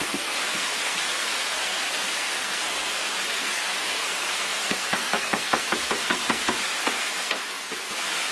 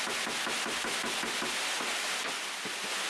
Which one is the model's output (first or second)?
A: first